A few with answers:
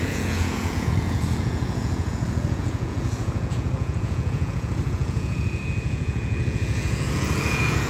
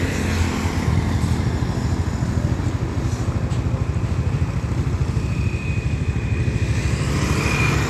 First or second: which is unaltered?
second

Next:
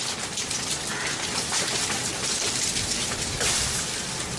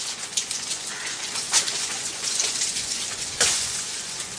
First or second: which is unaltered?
first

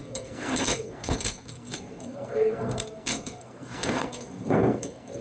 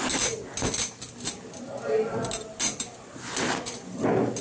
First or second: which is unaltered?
second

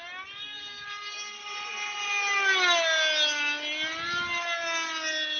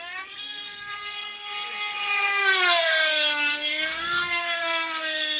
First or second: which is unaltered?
first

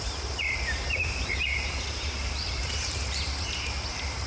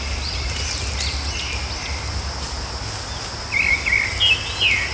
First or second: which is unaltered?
second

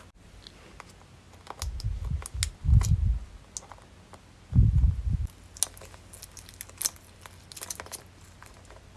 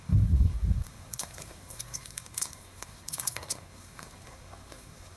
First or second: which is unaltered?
first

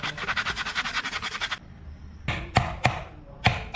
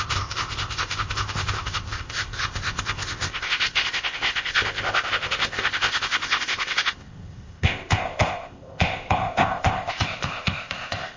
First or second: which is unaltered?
first